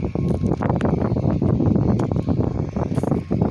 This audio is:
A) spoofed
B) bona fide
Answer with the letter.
B